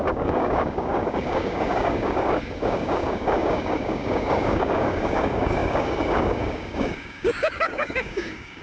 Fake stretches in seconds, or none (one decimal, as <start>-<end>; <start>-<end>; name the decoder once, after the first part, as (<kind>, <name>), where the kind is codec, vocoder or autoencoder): 0.0-8.6 (codec, DAC)